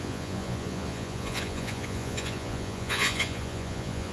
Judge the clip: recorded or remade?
remade